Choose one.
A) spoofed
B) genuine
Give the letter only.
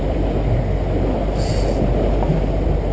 B